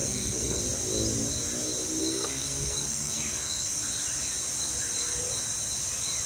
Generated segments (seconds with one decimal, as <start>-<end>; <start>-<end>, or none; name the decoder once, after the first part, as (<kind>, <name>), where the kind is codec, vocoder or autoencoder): 0.0-0.6 (codec, SNAC); 2.0-3.8